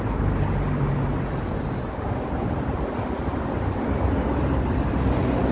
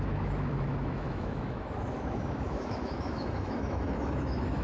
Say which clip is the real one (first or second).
first